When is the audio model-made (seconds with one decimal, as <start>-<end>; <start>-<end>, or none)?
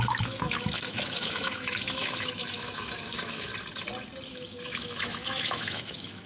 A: 0.0-3.5; 4.3-6.3